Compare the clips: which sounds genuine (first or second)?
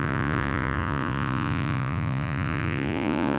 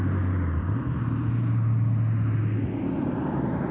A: second